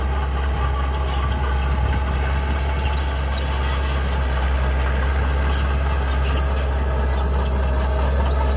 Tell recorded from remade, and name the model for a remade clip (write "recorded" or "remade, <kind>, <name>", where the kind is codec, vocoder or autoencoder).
recorded